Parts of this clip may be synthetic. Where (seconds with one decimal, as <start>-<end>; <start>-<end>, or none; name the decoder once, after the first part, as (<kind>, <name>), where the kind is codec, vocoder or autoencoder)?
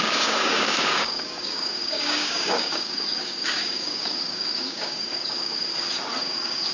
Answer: 0.0-5.7 (codec, DAC); 6.2-6.7